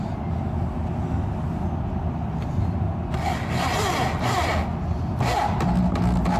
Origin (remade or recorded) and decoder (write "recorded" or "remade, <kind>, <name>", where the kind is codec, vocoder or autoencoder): recorded